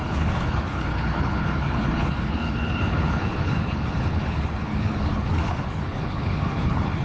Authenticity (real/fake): fake